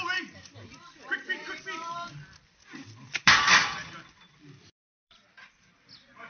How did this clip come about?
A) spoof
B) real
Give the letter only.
A